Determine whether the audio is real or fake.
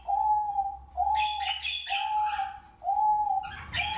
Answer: real